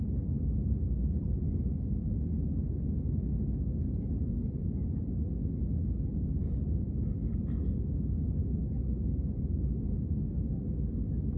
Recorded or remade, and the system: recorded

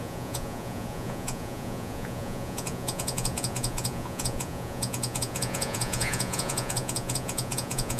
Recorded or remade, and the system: remade, vocoder, Vocos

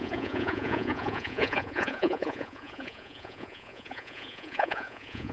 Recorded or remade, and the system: remade, vocoder, Vocos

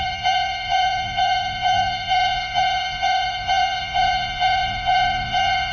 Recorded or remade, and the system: remade, vocoder, Vocos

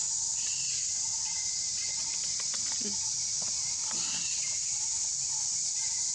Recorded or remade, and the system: recorded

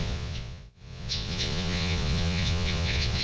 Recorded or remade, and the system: remade, vocoder, Vocos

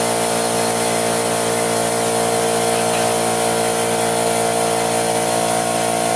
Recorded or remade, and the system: recorded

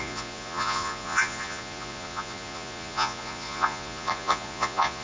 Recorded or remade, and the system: remade, vocoder, Vocos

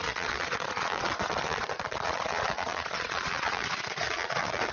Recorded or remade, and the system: remade, vocoder, Vocos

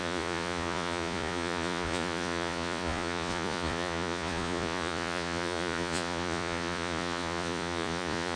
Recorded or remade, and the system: remade, vocoder, Vocos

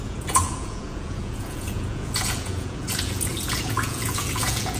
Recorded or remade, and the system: remade, vocoder, Vocos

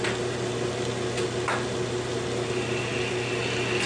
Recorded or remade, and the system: recorded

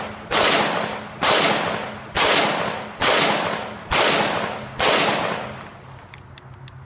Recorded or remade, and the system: recorded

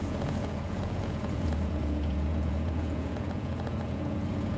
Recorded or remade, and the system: remade, vocoder, Vocos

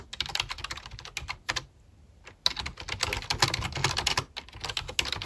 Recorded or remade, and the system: recorded